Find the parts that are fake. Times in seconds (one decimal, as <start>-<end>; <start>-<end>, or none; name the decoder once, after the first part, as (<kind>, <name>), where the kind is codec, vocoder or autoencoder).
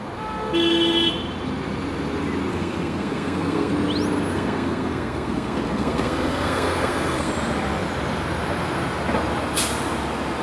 2.5-3.7 (codec, SNAC); 4.3-7.3